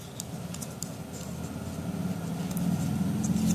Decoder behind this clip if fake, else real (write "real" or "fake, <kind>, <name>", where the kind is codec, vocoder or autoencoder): real